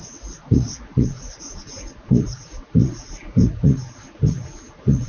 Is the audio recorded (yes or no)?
no